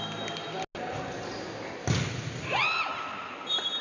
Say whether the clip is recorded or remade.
recorded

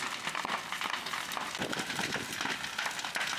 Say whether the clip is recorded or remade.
recorded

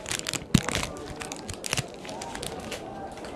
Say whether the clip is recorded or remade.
recorded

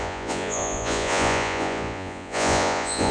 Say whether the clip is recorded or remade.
remade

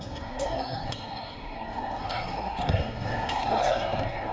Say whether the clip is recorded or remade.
remade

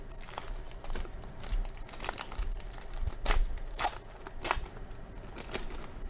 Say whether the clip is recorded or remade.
remade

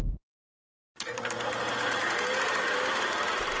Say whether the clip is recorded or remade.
recorded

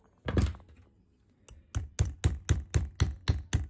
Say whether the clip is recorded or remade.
recorded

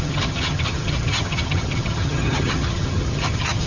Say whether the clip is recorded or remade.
remade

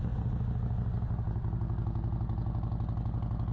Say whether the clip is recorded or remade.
recorded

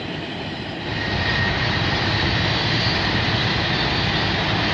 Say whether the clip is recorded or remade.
recorded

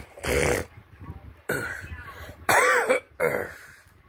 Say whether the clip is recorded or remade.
remade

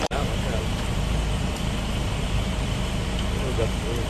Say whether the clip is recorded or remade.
remade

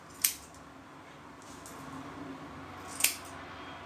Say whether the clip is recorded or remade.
recorded